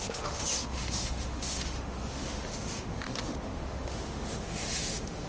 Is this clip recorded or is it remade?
remade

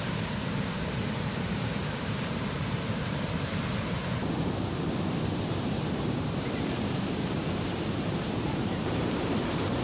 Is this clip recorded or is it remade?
remade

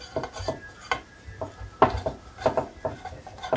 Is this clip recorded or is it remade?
recorded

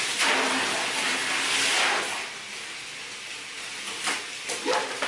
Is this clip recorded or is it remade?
recorded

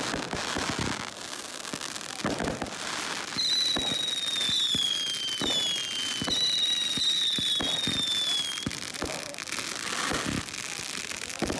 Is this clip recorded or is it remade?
recorded